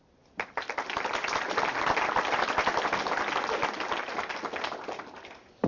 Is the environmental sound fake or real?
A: real